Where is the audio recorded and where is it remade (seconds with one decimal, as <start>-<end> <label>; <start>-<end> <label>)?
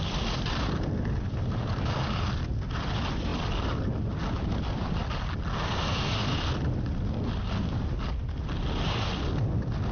0.0-9.9 recorded